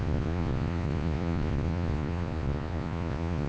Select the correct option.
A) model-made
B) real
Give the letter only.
A